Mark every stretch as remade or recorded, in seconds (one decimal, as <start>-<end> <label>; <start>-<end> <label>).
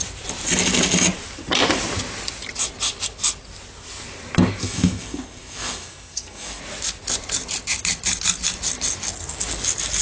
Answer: 0.0-4.6 recorded; 4.6-6.6 remade; 6.6-10.0 recorded